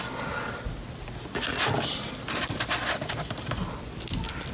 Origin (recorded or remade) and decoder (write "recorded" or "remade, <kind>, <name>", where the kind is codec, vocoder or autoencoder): recorded